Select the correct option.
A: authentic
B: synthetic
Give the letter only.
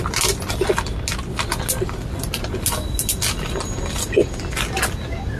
A